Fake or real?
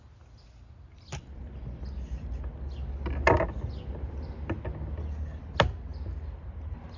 real